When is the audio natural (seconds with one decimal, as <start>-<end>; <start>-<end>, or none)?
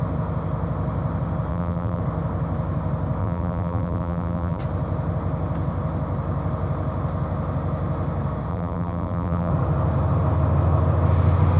0.0-1.5; 2.0-3.2; 4.6-8.5; 9.5-11.6